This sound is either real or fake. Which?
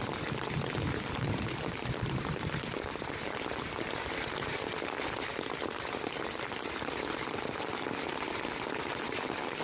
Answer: real